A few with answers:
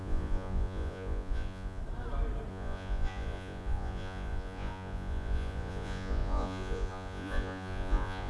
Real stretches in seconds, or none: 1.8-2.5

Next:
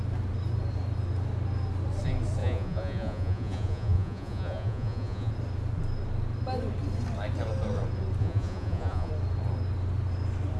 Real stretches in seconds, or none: 0.0-2.4; 5.3-8.2; 9.1-10.6

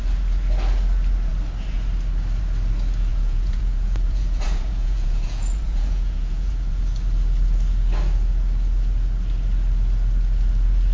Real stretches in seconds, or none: 0.0-3.1; 6.8-10.9

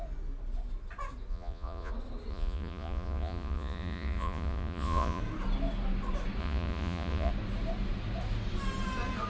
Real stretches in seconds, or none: 0.0-1.3; 1.9-2.3; 5.2-6.4; 7.3-9.3